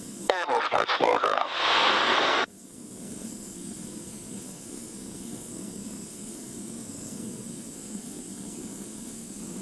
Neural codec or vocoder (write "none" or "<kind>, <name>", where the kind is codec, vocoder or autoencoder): codec, SNAC